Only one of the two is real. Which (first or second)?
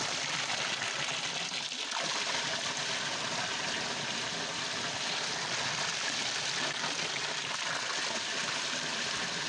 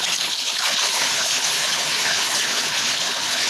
first